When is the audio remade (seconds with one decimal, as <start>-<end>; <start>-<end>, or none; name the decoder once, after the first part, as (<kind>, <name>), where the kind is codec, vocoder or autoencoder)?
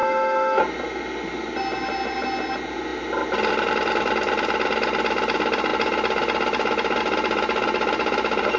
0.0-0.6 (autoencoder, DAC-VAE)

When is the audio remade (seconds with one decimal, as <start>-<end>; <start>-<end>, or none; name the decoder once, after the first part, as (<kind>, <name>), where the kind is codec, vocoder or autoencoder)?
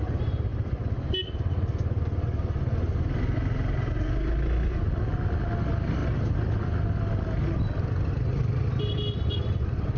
none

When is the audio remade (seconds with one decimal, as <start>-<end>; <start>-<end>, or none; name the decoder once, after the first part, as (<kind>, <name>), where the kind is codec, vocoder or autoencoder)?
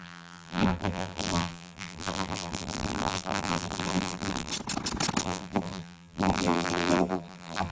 0.0-4.5 (vocoder, BigVGAN v2); 5.2-7.7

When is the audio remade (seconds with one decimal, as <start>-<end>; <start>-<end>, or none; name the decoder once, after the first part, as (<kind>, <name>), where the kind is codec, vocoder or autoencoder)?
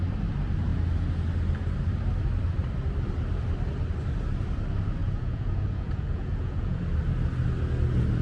5.0-6.8 (vocoder, Vocos)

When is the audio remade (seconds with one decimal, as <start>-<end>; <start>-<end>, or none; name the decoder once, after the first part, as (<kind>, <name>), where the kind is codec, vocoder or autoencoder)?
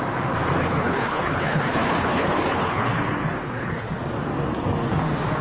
0.6-3.0 (codec, HILCodec); 3.4-4.0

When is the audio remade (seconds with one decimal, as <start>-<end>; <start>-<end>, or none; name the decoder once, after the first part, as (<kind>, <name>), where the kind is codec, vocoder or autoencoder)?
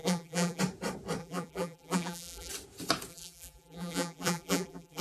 0.0-0.6 (vocoder, BigVGAN v2); 1.2-2.5; 3.1-5.0